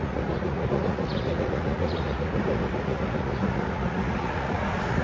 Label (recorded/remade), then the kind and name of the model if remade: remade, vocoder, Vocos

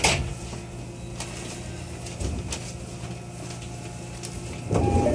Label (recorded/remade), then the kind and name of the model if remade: recorded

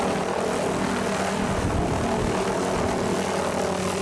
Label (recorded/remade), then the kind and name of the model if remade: recorded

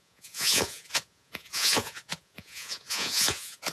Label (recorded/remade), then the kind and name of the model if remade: remade, vocoder, Vocos